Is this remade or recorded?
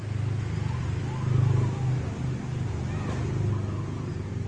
recorded